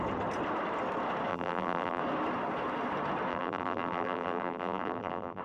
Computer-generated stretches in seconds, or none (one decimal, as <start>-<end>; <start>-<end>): 1.3-2.0; 3.3-5.4